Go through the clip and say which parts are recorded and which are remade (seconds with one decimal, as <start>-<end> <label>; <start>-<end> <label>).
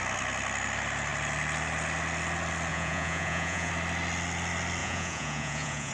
0.0-2.7 recorded; 2.7-3.7 remade; 3.7-4.8 recorded; 4.8-5.9 remade